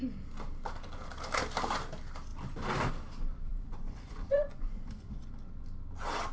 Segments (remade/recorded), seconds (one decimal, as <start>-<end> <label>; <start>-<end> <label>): 0.0-3.5 recorded; 3.5-5.2 remade; 5.2-6.3 recorded